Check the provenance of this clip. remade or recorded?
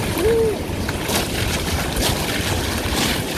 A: recorded